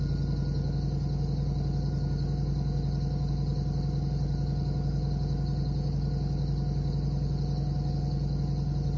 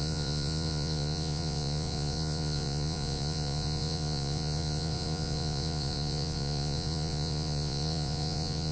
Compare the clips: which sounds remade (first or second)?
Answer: second